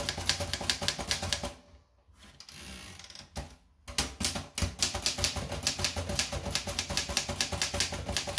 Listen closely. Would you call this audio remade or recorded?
recorded